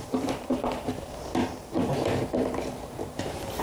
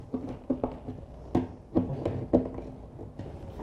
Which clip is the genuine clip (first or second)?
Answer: second